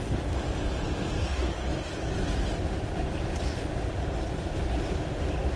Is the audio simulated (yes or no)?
no